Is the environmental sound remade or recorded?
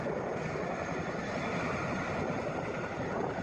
recorded